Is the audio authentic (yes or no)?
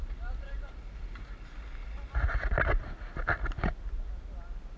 yes